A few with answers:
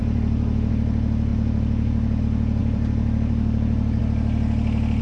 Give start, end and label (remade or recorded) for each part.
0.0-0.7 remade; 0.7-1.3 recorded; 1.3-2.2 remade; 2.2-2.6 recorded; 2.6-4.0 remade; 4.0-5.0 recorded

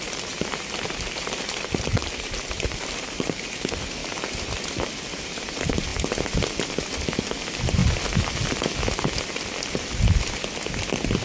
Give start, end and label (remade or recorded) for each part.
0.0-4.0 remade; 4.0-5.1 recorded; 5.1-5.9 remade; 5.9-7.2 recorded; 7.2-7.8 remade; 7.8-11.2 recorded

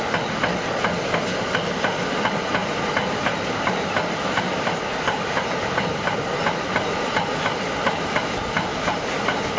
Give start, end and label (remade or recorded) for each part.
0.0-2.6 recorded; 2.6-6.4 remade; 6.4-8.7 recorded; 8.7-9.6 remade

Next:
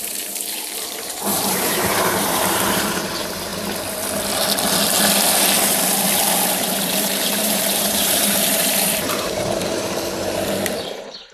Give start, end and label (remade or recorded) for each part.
0.0-3.5 remade; 3.5-6.5 recorded; 6.5-11.3 remade

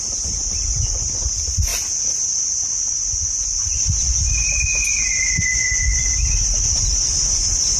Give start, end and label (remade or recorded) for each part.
0.0-1.7 remade; 1.7-2.8 recorded; 2.8-7.8 remade